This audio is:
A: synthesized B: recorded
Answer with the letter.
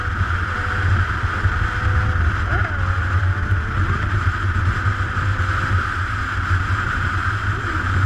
B